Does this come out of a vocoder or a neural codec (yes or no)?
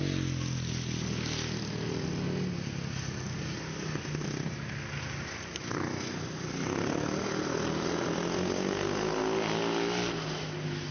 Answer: no